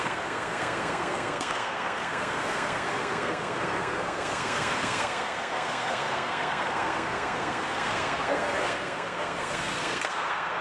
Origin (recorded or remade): remade